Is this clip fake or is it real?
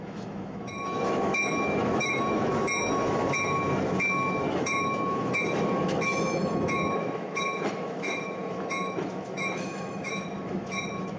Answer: fake